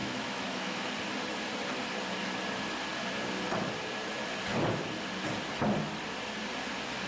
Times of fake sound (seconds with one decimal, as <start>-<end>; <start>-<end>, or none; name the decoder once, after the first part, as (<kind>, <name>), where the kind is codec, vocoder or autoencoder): 0.0-0.9 (autoencoder, DAC-VAE)